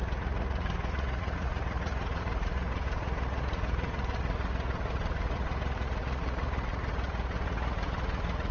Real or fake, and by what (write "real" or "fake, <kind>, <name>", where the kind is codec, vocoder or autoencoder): fake, vocoder, Vocos